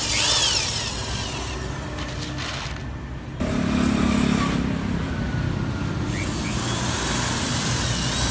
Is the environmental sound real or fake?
real